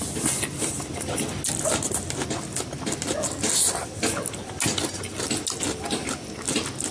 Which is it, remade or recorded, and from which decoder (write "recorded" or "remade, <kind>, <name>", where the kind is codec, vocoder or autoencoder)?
recorded